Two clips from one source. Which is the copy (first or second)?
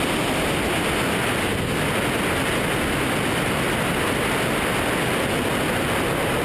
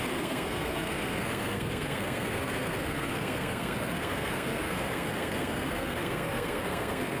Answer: second